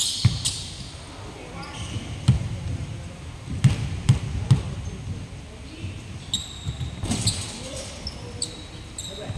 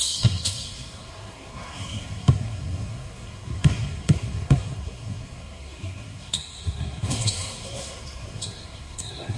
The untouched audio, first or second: first